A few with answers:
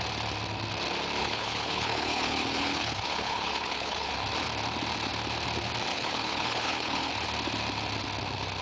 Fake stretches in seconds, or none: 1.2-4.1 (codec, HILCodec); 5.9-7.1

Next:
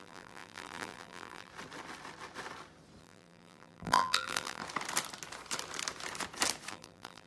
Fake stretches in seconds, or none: 0.0-1.5 (vocoder, BigVGAN v2); 3.0-4.6; 6.7-7.3

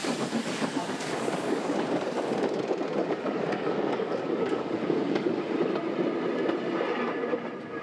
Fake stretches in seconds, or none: 0.0-2.6 (codec, DAC); 3.0-5.4